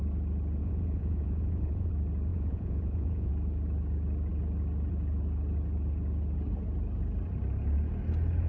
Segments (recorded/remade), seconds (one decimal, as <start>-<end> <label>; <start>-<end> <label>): 0.0-0.6 recorded; 0.6-1.9 remade; 1.9-2.3 recorded; 2.3-3.3 remade; 3.3-8.5 recorded